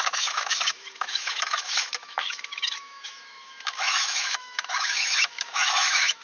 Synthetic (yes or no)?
yes